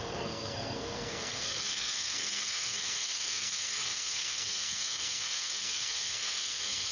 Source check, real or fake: fake